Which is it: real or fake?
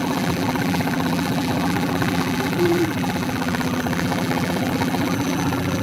fake